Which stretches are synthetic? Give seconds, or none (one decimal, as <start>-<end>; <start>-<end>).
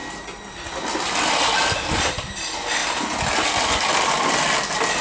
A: none